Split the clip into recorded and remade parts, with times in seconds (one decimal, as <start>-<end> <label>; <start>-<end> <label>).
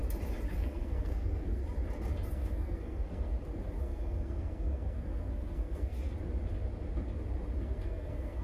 0.0-0.5 recorded; 0.5-1.6 remade; 1.6-2.3 recorded; 2.3-3.3 remade; 3.3-3.8 recorded; 3.8-6.0 remade; 6.0-7.6 recorded; 7.6-8.4 remade